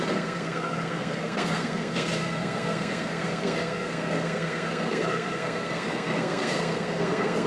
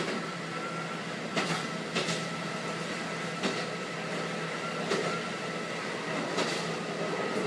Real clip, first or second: second